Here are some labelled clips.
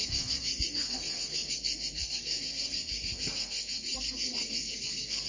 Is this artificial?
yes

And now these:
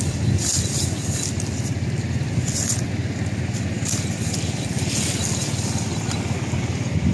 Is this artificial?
no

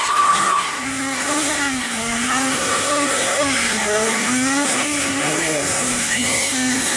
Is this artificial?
yes